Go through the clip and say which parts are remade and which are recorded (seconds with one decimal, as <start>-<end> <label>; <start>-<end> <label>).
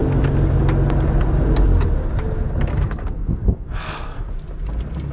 0.0-2.7 recorded; 2.7-4.2 remade; 4.2-5.1 recorded